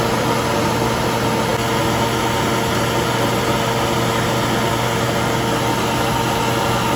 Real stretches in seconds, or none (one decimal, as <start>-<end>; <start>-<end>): 0.0-7.0